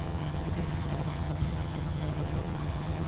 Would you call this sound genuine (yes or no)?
no